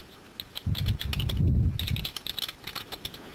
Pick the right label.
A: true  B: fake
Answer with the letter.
A